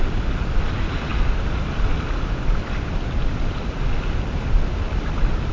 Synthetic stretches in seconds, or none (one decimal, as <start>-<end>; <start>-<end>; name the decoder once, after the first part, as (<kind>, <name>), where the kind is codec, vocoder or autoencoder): none